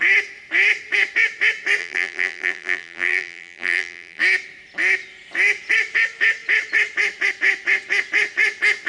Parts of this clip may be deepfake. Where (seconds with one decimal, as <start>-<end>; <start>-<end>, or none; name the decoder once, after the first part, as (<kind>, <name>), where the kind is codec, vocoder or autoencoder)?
1.8-4.2 (vocoder, BigVGAN v2)